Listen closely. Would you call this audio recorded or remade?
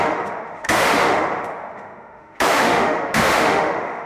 remade